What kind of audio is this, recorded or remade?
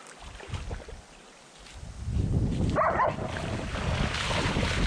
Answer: recorded